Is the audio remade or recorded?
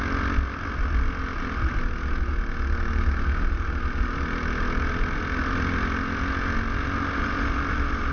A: recorded